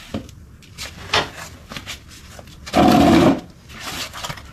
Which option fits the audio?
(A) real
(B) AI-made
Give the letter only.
A